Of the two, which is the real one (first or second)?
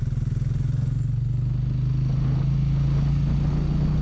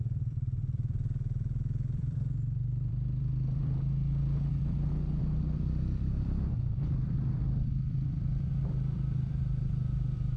first